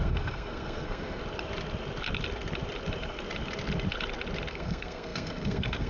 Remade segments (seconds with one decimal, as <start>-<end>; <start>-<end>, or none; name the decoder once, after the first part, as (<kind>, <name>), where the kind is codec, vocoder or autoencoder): 0.0-1.2 (codec, SNAC); 4.5-5.9